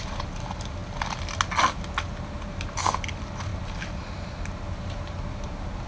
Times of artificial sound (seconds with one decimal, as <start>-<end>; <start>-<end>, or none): none